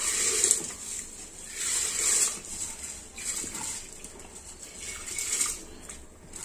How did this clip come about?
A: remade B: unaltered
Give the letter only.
B